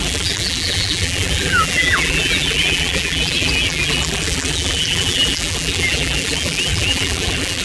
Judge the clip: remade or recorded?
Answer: remade